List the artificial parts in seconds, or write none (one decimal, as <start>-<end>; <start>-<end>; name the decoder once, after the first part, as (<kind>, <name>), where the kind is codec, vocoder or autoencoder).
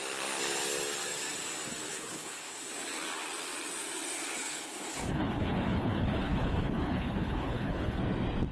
1.9-2.6 (codec, HILCodec); 4.3-8.0